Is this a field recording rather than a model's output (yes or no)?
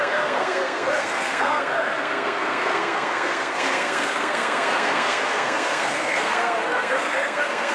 no